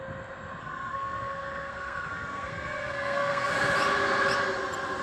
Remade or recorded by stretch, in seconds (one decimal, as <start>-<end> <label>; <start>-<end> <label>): 0.0-0.6 recorded; 0.6-3.5 remade; 3.5-5.0 recorded

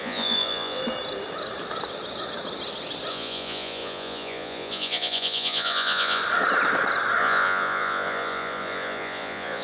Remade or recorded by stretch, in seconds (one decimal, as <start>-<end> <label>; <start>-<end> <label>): 0.0-0.8 remade; 0.8-3.1 recorded; 3.1-6.2 remade; 6.2-7.2 recorded; 7.2-9.6 remade

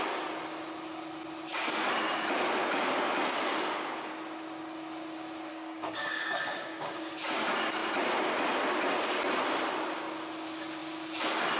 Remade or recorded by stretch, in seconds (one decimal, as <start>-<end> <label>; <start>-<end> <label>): 0.0-3.5 recorded; 3.5-4.1 remade; 4.1-5.5 recorded; 5.5-7.1 remade; 7.1-11.6 recorded

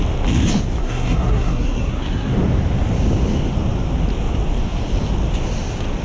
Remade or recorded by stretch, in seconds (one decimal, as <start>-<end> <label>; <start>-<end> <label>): 0.0-0.8 recorded; 0.8-2.3 remade; 2.3-6.0 recorded

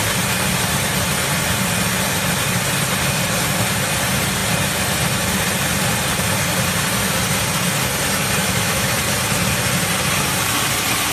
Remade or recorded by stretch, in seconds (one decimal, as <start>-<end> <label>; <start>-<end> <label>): 0.0-8.4 recorded; 8.4-8.9 remade; 8.9-11.1 recorded

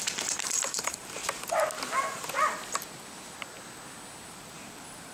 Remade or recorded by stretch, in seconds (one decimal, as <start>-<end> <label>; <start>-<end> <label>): 0.0-1.2 remade; 1.2-4.3 recorded; 4.3-5.1 remade

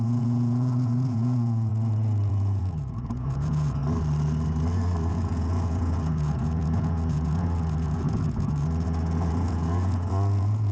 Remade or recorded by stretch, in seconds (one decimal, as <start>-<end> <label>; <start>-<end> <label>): 0.0-1.7 remade; 1.7-2.3 recorded; 2.3-3.8 remade; 3.8-5.1 recorded; 5.1-10.7 remade